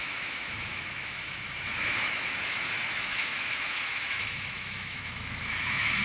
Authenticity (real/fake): fake